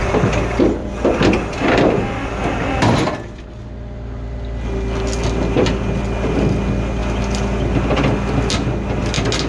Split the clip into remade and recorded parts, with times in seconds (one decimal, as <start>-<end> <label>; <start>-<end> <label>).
0.0-0.8 recorded; 0.8-1.9 remade; 1.9-7.0 recorded; 7.0-7.9 remade; 7.9-9.5 recorded

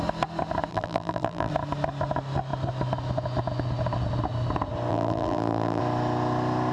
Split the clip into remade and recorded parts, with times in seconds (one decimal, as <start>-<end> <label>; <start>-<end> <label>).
0.0-0.7 recorded; 0.7-1.5 remade; 1.5-4.9 recorded; 4.9-5.8 remade; 5.8-6.7 recorded

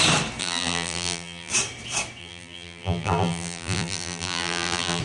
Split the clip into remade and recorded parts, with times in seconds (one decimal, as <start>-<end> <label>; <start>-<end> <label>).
0.0-0.4 recorded; 0.4-1.5 remade; 1.5-2.2 recorded; 2.2-5.0 remade

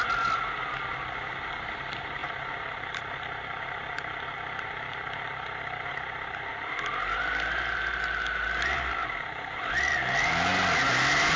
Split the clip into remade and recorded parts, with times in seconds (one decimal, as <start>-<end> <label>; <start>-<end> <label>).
0.0-2.2 recorded; 2.2-6.5 remade; 6.5-9.0 recorded; 9.0-9.7 remade; 9.7-11.4 recorded

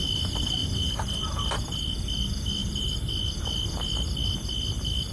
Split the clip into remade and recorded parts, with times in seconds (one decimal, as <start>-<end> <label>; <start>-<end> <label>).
0.0-2.6 recorded; 2.6-3.2 remade; 3.2-5.1 recorded

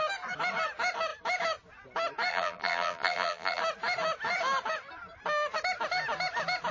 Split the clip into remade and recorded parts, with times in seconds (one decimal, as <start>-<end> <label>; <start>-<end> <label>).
0.0-2.3 recorded; 2.3-3.6 remade; 3.6-6.7 recorded

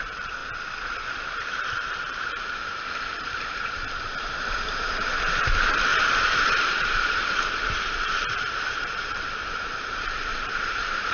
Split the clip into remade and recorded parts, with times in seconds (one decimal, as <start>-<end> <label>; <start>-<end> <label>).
0.0-0.4 remade; 0.4-1.1 recorded; 1.1-11.1 remade